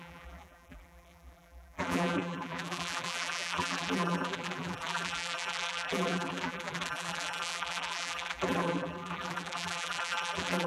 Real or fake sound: fake